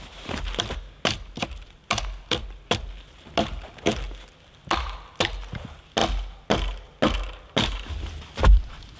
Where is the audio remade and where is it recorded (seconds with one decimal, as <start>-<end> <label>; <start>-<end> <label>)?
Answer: 0.0-9.0 recorded